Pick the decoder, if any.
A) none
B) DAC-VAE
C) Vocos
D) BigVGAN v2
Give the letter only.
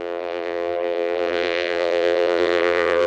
D